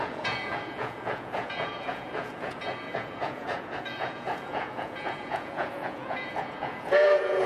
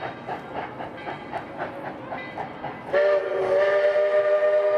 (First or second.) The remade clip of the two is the first